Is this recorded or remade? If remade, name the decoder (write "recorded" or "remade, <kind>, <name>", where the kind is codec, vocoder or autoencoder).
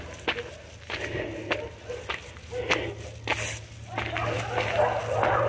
recorded